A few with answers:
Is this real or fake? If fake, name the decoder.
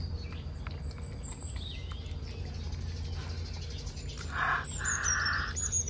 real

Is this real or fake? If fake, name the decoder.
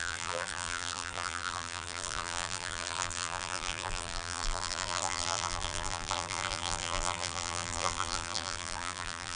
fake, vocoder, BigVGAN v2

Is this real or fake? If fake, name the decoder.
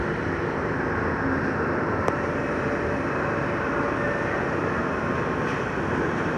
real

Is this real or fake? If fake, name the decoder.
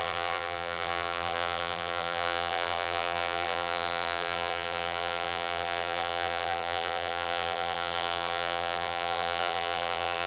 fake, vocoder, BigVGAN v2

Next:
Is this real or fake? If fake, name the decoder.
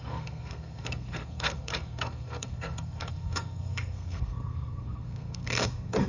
fake, codec, SNAC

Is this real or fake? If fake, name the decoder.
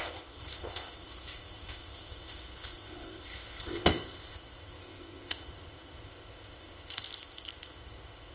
fake, codec, ZipCodec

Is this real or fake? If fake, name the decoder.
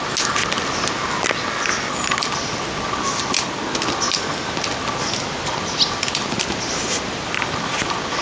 real